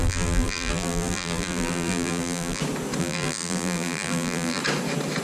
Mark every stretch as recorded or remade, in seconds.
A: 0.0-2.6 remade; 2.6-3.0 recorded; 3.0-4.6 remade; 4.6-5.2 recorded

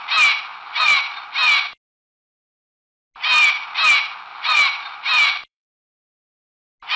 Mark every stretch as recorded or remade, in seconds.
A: 0.0-0.5 recorded; 0.5-1.2 remade; 1.2-4.3 recorded; 4.3-6.1 remade; 6.1-7.0 recorded

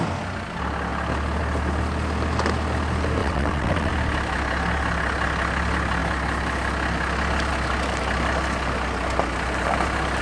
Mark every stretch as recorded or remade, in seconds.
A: 0.0-3.2 recorded; 3.2-3.9 remade; 3.9-10.2 recorded

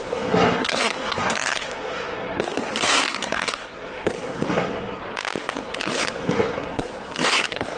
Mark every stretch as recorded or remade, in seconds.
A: 0.0-5.0 remade; 5.0-5.5 recorded; 5.5-7.8 remade

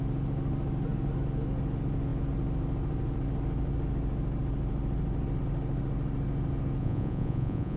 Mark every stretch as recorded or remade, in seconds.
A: 0.0-6.8 recorded; 6.8-7.8 remade

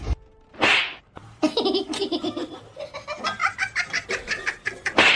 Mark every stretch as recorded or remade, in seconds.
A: 0.0-5.2 recorded